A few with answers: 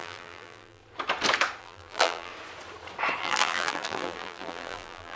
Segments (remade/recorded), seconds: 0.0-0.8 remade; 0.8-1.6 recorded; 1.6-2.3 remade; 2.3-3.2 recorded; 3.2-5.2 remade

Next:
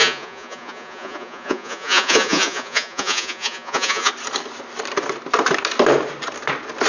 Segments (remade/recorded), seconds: 0.0-4.1 remade; 4.1-6.9 recorded